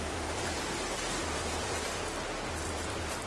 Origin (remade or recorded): recorded